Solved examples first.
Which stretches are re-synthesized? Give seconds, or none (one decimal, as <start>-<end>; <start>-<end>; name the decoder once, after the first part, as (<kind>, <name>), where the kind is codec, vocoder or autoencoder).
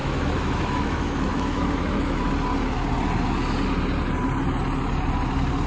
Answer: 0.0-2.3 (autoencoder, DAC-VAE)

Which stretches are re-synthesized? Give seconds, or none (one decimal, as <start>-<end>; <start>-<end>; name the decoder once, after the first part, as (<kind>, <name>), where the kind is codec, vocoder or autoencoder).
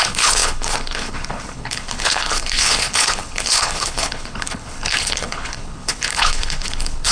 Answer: 0.0-7.1 (codec, HILCodec)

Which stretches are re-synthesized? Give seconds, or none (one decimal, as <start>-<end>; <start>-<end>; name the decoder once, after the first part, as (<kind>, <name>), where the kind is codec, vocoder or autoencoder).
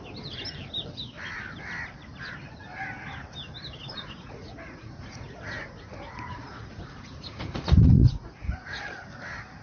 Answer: 3.8-8.8 (vocoder, Vocos)